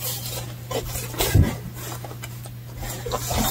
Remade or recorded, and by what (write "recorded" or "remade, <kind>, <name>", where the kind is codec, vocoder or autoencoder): recorded